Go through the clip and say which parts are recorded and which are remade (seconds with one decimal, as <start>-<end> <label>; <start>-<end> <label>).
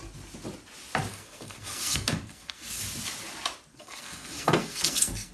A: 0.0-1.1 recorded; 1.1-2.8 remade; 2.8-3.7 recorded; 3.7-5.3 remade